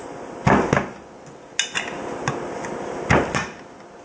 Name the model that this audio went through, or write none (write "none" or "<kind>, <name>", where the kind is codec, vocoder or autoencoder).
none